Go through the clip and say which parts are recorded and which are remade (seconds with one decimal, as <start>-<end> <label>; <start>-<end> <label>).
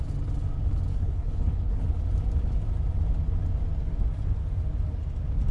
0.0-0.9 recorded; 0.9-2.0 remade; 2.0-5.5 recorded